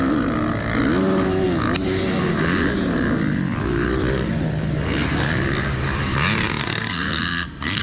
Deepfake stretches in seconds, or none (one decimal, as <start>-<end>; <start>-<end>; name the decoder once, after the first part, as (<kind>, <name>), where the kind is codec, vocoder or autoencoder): 6.6-7.8 (codec, SNAC)